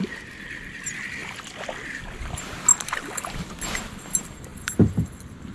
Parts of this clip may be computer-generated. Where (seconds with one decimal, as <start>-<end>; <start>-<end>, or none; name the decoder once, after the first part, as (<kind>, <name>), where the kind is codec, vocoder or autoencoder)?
2.7-3.4 (vocoder, BigVGAN v2); 4.5-5.5